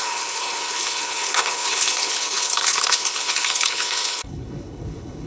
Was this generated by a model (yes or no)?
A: yes